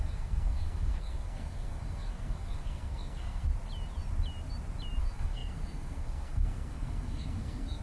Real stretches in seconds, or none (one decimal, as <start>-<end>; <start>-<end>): 3.5-5.0

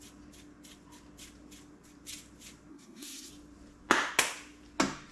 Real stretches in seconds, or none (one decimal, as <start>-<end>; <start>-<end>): 0.0-2.7; 3.3-5.1

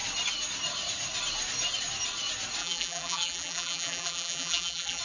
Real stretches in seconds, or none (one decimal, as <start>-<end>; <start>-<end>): 0.0-2.6